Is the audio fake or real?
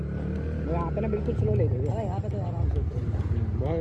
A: real